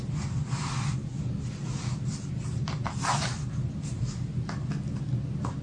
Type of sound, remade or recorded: recorded